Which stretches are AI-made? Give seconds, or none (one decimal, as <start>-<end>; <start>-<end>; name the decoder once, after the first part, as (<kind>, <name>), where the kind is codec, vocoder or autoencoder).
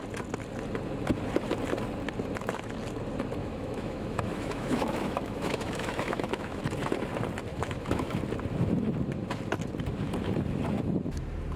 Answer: 3.4-6.6 (autoencoder, DAC-VAE); 7.5-8.2